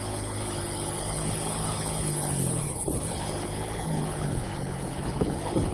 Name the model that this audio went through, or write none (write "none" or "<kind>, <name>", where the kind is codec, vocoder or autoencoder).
codec, HILCodec